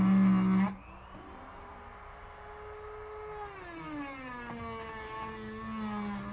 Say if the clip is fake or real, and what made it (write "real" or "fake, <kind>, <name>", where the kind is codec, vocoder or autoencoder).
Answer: real